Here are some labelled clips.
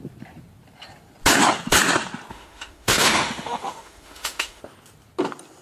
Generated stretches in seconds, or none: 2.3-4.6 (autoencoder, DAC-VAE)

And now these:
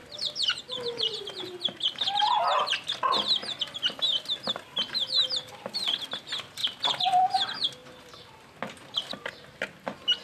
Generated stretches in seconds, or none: none